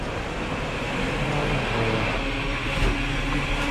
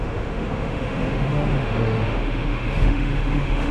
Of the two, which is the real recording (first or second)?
first